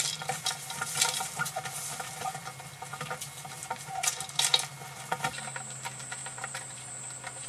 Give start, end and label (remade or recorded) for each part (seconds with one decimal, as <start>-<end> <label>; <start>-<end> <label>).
0.0-6.2 recorded; 6.2-6.9 remade; 6.9-7.5 recorded